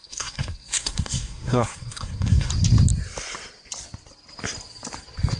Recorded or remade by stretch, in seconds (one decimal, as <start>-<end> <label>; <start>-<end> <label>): 0.0-2.5 remade; 2.5-5.4 recorded